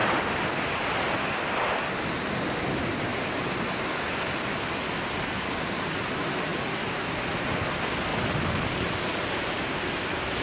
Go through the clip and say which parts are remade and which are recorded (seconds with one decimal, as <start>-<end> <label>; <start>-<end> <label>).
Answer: 0.0-3.1 recorded; 3.1-4.0 remade; 4.0-8.1 recorded; 8.1-9.8 remade; 9.8-10.4 recorded